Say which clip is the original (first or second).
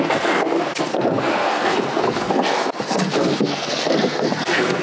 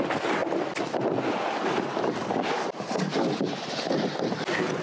second